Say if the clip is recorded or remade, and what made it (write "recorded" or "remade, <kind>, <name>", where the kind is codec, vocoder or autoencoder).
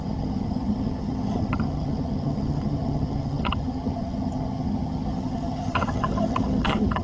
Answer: remade, vocoder, HiFi-GAN